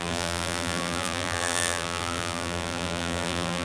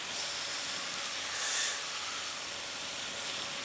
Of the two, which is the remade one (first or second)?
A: first